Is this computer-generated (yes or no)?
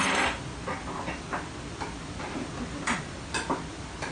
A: no